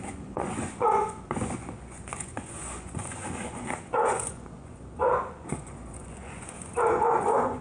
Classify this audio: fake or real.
fake